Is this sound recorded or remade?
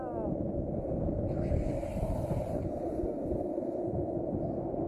recorded